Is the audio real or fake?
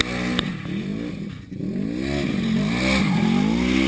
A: real